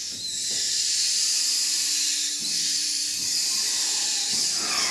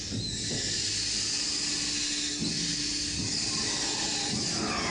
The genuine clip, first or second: second